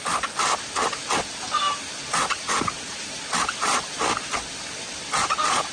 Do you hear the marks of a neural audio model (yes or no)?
no